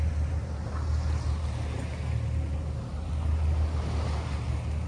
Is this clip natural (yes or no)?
yes